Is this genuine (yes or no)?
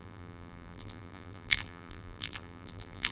no